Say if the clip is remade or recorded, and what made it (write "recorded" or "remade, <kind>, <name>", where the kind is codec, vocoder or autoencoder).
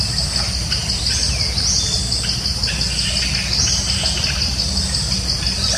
recorded